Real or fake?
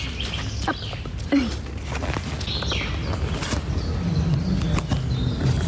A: real